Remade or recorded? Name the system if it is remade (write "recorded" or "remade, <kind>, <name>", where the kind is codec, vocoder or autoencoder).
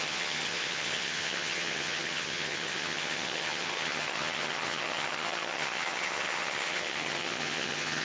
remade, vocoder, HiFi-GAN